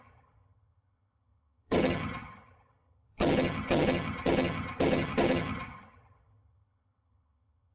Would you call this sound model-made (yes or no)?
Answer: yes